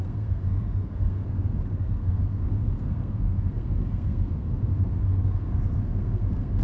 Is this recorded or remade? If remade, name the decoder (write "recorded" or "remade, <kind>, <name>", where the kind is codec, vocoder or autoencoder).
remade, codec, SNAC